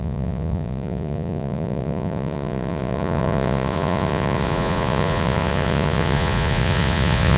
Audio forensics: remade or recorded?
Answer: remade